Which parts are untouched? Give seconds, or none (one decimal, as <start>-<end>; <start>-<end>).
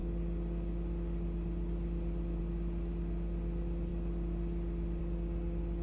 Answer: 0.0-5.8